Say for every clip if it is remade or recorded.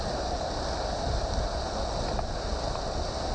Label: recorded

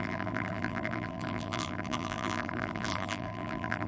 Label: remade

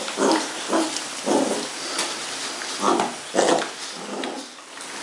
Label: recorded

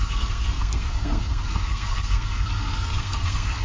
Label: remade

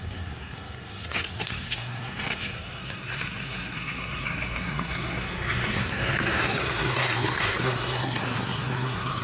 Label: remade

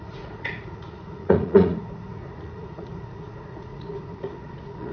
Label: remade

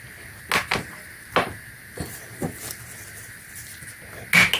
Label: recorded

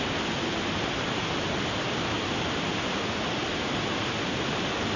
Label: recorded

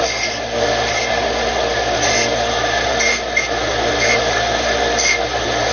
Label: recorded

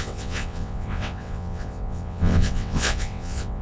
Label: remade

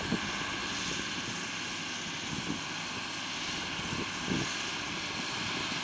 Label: recorded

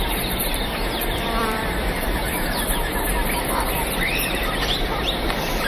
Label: remade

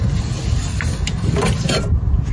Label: recorded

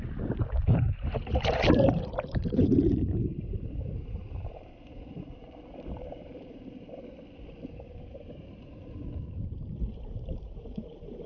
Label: remade